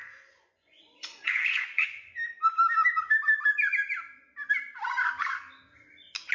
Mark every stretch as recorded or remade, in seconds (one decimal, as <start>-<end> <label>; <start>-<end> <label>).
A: 0.0-2.2 remade; 2.2-6.3 recorded

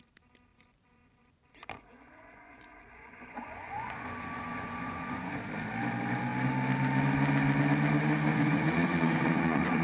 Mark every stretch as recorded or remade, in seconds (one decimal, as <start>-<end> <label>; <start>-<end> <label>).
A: 0.0-0.5 recorded; 0.5-5.3 remade; 5.3-8.3 recorded; 8.3-9.8 remade

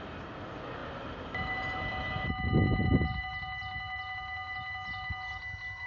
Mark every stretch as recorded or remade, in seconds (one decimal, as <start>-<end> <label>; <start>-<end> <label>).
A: 0.0-5.9 recorded

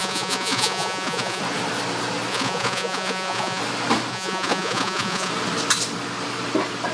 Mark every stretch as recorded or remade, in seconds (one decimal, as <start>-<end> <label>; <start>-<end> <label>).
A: 0.0-1.4 remade; 1.4-2.3 recorded; 2.3-3.6 remade; 3.6-4.1 recorded; 4.1-5.3 remade; 5.3-6.9 recorded